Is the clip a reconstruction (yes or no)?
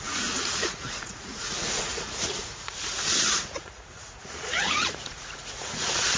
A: yes